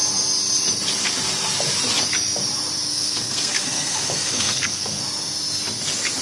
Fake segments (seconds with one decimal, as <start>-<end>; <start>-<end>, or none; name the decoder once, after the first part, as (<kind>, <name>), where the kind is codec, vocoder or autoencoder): 2.9-5.0 (codec, SNAC)